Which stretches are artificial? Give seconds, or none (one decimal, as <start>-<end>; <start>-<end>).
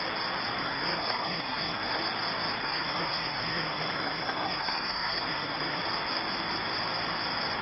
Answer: 0.6-2.0; 2.6-5.8